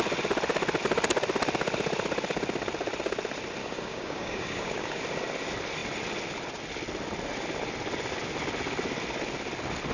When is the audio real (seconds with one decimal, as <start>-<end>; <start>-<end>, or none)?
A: 0.0-3.6; 5.0-9.9

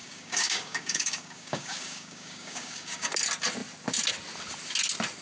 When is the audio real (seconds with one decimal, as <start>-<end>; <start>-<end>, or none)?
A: 3.1-5.2

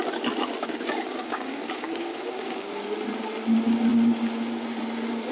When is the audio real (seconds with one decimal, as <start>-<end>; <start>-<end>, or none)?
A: 0.0-0.6; 2.8-5.3

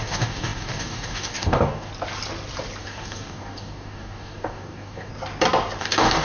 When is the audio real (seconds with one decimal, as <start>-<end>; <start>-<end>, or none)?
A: 1.9-2.8; 5.1-5.8

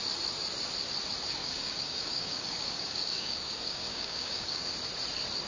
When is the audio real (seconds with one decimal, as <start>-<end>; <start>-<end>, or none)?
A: 0.0-1.4; 4.7-5.5

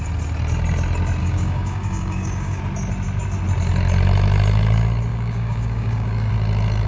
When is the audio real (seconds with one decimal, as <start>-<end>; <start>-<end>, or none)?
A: 0.0-1.2; 2.6-5.1; 6.3-6.9